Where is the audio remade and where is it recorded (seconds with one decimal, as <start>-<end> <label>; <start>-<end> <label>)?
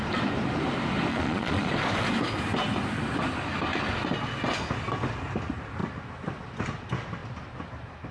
0.0-1.1 recorded; 1.1-1.7 remade; 1.7-8.1 recorded